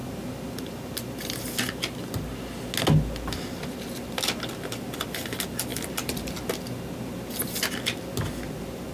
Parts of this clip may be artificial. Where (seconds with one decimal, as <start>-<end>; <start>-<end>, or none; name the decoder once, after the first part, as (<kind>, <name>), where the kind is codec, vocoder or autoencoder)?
none